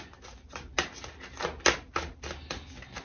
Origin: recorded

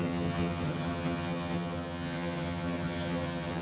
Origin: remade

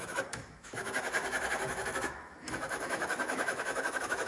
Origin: remade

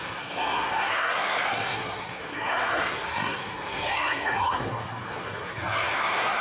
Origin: remade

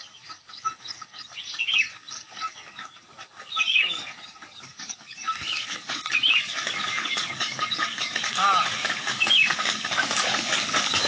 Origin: remade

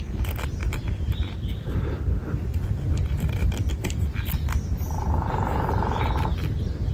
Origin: recorded